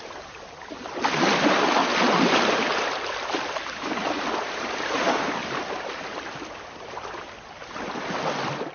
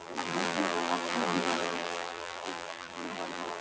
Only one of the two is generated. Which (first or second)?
second